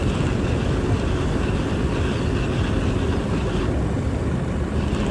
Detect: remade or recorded recorded